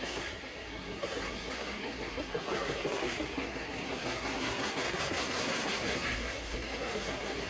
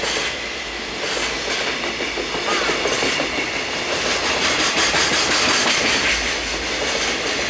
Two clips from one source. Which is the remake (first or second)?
first